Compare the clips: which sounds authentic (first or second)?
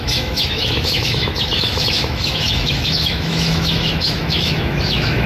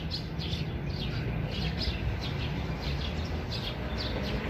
second